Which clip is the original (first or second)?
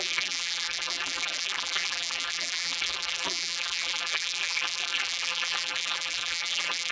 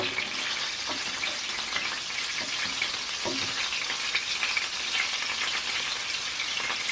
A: second